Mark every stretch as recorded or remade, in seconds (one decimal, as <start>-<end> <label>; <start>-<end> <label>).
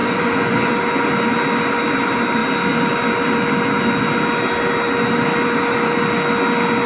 0.0-0.7 remade; 0.7-6.9 recorded